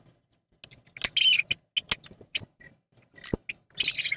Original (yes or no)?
yes